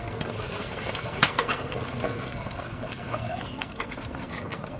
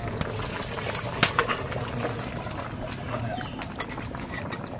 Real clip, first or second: second